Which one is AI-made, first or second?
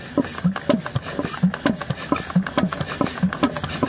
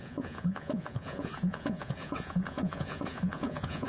second